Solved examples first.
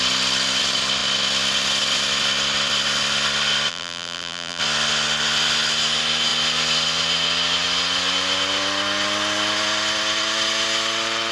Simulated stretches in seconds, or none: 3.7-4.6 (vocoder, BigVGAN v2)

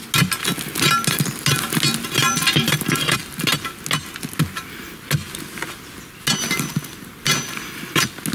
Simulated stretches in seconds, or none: 2.2-3.2 (vocoder, BigVGAN v2)

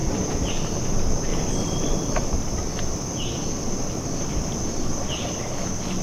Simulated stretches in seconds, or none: 0.0-0.5 (vocoder, BigVGAN v2); 1.3-2.3

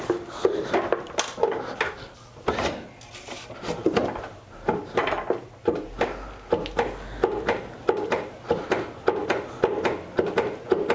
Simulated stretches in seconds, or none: 9.2-9.9 (vocoder, BigVGAN v2)

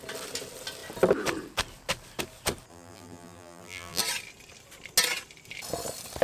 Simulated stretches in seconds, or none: 2.7-4.0 (vocoder, BigVGAN v2)

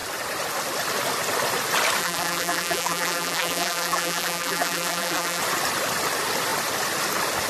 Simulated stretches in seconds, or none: 2.0-5.4 (vocoder, BigVGAN v2)

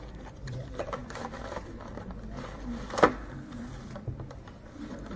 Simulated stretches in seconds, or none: 0.0-5.2 (vocoder, BigVGAN v2)